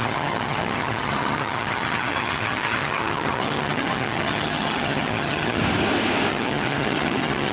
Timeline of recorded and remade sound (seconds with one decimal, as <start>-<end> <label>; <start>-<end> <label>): 0.0-5.6 remade; 5.6-6.3 recorded; 6.3-7.5 remade